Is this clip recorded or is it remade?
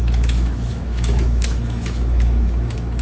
remade